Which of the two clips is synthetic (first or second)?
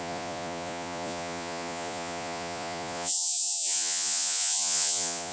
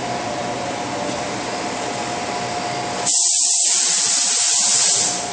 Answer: first